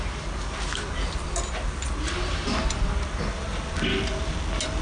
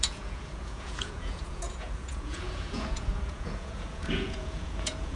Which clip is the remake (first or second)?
second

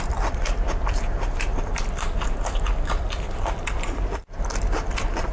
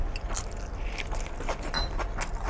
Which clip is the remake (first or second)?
first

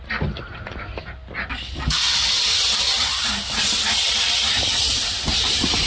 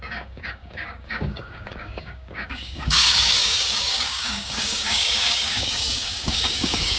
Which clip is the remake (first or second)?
second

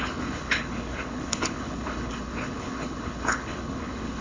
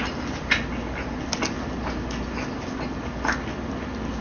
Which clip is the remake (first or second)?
first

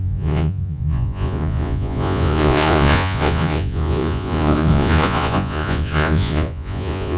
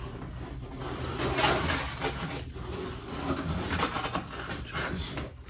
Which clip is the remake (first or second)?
first